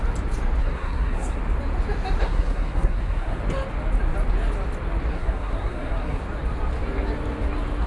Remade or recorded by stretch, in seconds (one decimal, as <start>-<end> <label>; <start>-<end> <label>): 0.0-0.6 recorded; 0.6-1.4 remade; 1.4-2.2 recorded; 2.2-3.4 remade; 3.4-5.1 recorded; 5.1-6.2 remade; 6.2-7.9 recorded